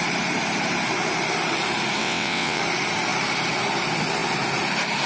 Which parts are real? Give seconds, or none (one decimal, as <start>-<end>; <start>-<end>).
0.0-2.0; 2.6-5.1